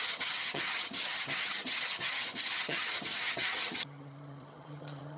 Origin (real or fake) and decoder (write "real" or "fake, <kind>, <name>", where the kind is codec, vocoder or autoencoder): fake, vocoder, HiFi-GAN